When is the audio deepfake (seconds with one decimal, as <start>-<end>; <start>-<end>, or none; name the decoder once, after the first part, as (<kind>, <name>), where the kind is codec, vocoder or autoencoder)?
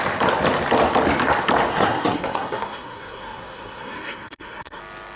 1.7-4.8 (codec, SNAC)